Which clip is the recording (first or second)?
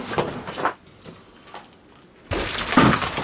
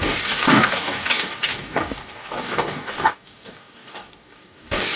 first